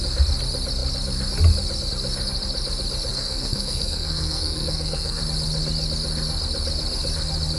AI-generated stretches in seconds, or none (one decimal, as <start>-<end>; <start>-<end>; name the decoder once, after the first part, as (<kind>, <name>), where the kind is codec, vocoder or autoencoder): 3.1-5.2 (codec, SNAC)